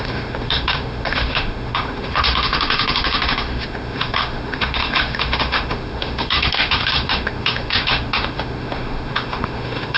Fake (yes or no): yes